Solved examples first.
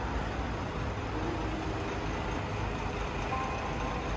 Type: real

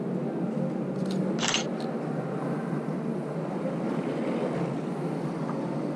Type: real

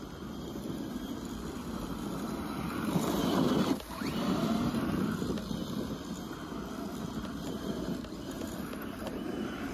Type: real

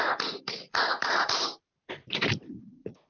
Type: fake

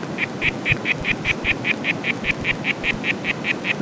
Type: fake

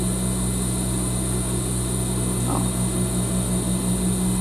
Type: real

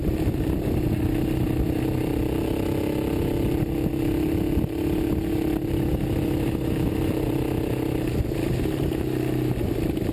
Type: real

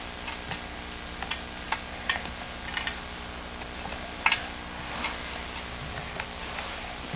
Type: real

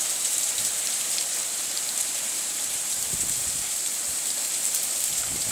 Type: fake